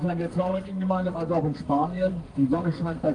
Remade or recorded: remade